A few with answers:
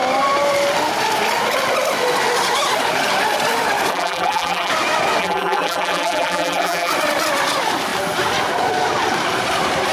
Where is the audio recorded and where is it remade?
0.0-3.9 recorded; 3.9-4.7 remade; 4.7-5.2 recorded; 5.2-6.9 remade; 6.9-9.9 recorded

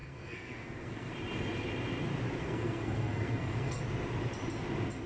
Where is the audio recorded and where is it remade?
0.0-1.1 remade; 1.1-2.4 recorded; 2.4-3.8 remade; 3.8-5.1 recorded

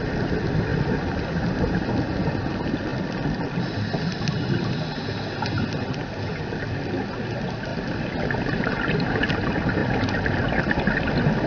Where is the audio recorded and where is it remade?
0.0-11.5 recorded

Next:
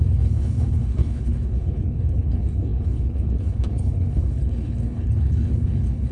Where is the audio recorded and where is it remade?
0.0-6.1 remade

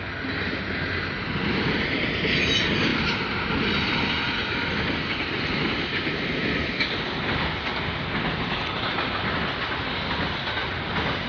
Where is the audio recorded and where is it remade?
0.0-11.3 recorded

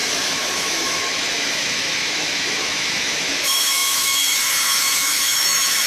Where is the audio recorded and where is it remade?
0.0-5.9 remade

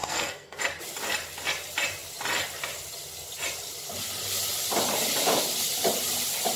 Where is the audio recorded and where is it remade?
0.0-0.6 remade; 0.6-6.6 recorded